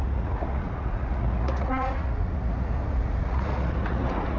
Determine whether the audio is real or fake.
fake